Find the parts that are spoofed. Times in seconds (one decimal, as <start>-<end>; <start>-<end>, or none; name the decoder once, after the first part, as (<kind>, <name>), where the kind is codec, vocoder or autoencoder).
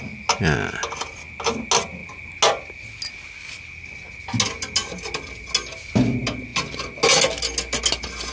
none